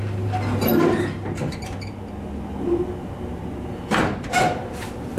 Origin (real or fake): real